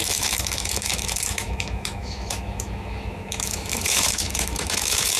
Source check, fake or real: fake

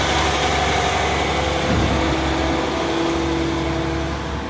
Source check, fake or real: real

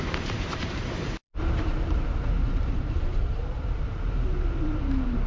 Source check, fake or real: fake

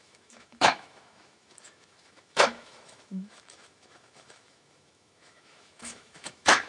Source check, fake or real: fake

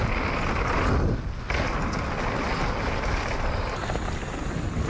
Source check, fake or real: real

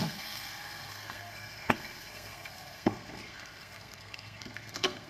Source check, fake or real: fake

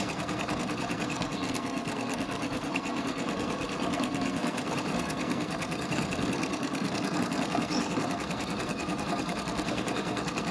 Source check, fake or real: fake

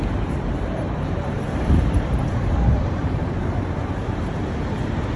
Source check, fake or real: fake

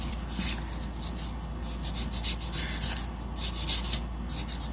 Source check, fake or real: real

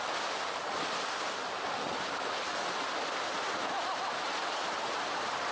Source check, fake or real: real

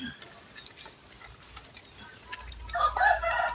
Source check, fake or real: real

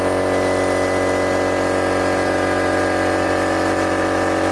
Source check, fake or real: real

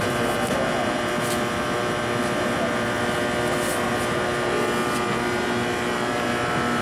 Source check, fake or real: real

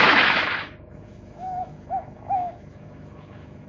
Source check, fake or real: fake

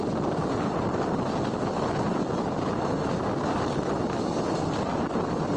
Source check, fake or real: real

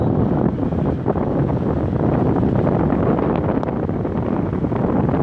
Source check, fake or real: real